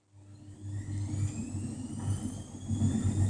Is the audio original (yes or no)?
yes